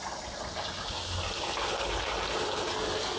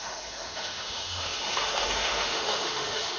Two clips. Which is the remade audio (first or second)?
second